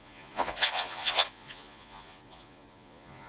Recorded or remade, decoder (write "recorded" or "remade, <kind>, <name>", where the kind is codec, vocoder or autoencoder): remade, vocoder, Vocos